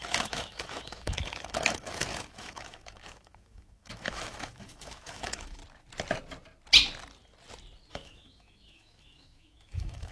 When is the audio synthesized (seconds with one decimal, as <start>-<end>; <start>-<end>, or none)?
0.0-5.6; 7.9-10.1